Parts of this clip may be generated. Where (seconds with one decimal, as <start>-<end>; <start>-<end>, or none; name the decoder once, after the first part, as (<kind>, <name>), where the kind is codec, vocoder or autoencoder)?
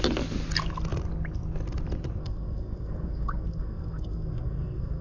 2.2-5.0 (codec, SNAC)